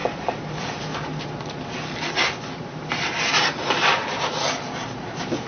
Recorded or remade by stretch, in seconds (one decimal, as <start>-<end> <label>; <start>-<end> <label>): 0.0-2.7 recorded; 2.7-4.0 remade; 4.0-5.5 recorded